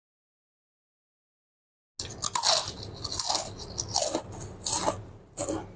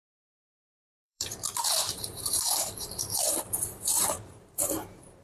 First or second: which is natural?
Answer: first